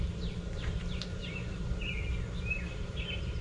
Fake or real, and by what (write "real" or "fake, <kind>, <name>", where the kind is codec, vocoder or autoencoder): fake, vocoder, BigVGAN v2